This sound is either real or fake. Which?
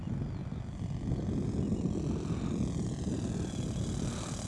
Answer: real